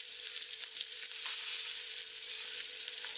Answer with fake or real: real